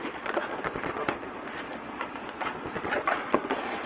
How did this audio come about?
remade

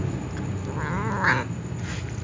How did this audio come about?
recorded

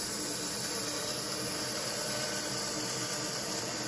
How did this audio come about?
remade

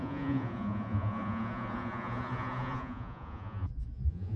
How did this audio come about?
remade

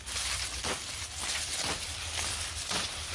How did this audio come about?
recorded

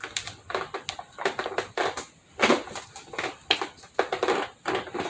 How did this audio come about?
recorded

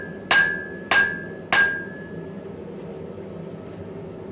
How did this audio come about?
recorded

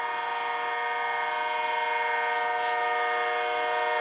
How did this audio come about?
recorded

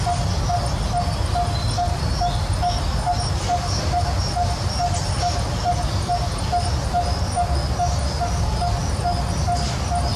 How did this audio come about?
recorded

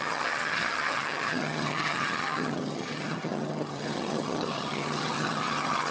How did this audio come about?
remade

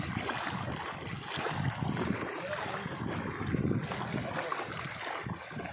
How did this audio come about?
recorded